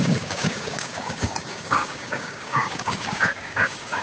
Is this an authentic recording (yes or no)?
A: no